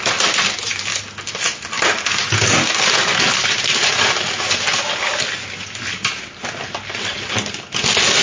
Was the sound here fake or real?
real